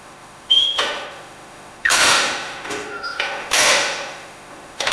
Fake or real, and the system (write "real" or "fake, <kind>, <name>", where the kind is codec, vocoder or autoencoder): fake, autoencoder, DAC-VAE